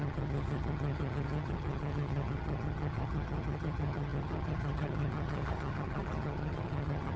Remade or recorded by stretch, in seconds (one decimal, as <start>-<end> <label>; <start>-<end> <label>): 0.0-7.2 remade